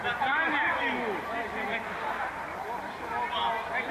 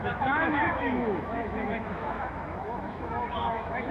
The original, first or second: first